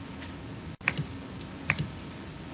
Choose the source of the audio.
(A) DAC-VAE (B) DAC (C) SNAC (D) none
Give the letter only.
D